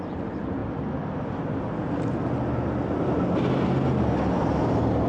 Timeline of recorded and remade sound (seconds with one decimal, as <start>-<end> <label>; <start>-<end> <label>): 0.0-5.1 recorded